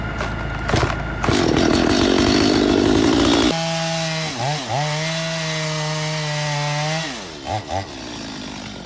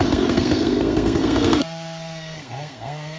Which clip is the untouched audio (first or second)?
first